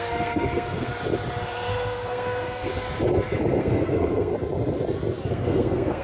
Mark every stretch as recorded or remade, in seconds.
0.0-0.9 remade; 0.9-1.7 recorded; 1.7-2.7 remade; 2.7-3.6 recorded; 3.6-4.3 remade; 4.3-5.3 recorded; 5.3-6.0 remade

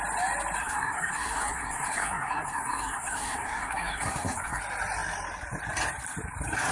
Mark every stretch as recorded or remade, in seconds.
0.0-0.6 recorded; 0.6-4.6 remade; 4.6-6.7 recorded